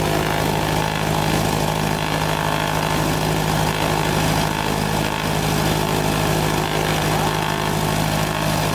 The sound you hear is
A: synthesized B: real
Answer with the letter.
B